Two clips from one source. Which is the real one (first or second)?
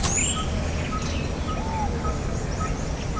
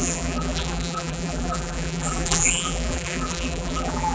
first